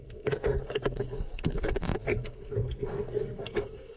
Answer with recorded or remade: remade